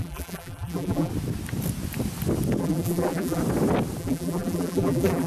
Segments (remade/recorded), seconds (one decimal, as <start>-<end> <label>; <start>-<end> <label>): 0.0-1.1 remade; 1.1-2.6 recorded; 2.6-3.4 remade; 3.4-4.0 recorded; 4.0-5.3 remade